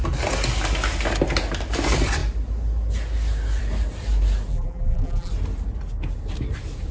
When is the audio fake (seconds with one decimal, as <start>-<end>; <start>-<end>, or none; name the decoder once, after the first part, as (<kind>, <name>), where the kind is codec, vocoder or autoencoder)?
4.5-5.3 (vocoder, BigVGAN v2)